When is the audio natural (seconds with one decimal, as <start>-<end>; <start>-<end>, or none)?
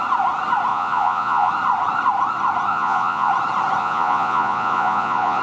0.0-0.7; 1.5-2.7; 3.3-3.8